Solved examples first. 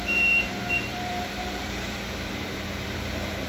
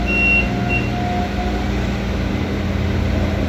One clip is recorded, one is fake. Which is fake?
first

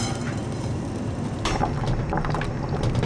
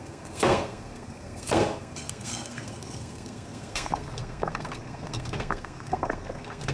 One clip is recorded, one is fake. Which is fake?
second